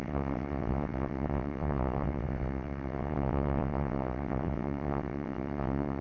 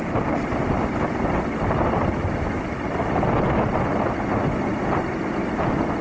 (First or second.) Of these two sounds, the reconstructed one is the first